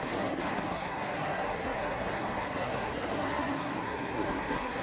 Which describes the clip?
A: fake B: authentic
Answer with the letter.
A